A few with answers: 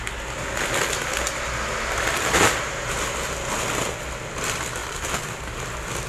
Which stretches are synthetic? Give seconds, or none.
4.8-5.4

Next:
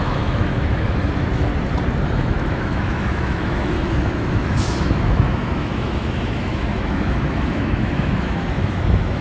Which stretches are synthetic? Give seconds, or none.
0.0-1.5; 2.2-9.2

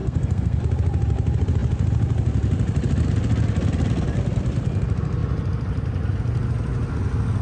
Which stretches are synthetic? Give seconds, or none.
0.0-0.6

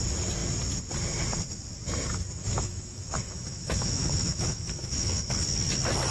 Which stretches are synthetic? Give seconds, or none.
2.4-5.3

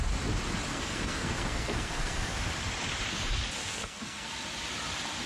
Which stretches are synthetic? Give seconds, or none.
0.7-2.4; 3.6-4.3

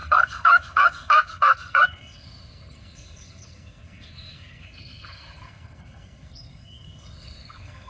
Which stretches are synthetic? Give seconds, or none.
0.0-7.9